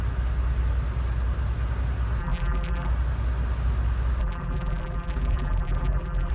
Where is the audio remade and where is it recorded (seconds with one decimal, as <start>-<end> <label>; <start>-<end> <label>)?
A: 0.0-2.2 recorded; 2.2-2.9 remade; 2.9-4.2 recorded; 4.2-6.3 remade